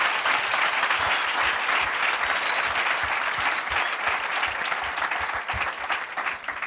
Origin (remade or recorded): recorded